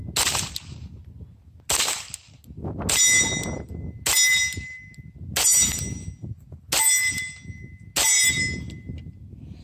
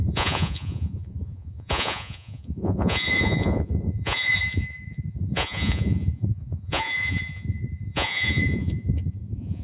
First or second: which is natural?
first